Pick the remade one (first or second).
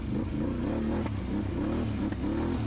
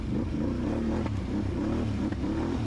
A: second